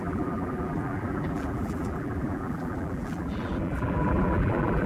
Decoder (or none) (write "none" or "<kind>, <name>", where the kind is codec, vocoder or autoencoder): vocoder, BigVGAN v2